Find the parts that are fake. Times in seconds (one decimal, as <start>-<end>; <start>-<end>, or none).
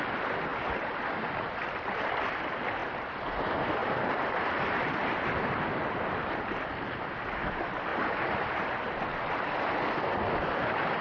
0.5-1.0; 2.8-3.3; 3.8-6.7; 7.9-8.7